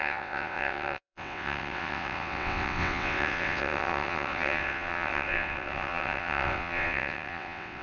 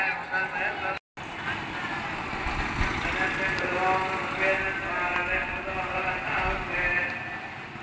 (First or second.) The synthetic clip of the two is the first